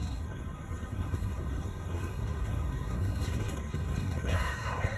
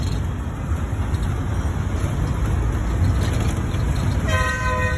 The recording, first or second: second